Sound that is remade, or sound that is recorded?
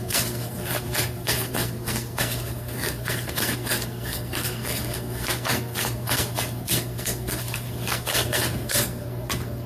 remade